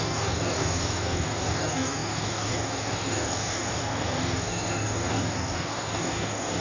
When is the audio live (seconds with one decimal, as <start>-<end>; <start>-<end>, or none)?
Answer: none

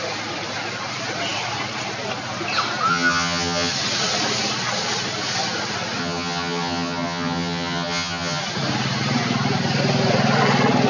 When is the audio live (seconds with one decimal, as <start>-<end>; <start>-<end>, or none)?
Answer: 0.0-2.9; 3.7-6.0; 8.4-10.9